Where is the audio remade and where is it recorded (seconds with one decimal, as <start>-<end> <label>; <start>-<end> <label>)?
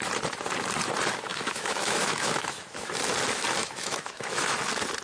0.0-1.3 recorded; 1.3-2.9 remade; 2.9-3.6 recorded; 3.6-4.6 remade; 4.6-5.0 recorded